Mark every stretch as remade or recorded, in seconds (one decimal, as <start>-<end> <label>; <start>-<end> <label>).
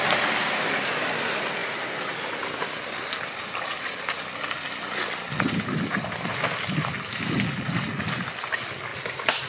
0.0-9.5 recorded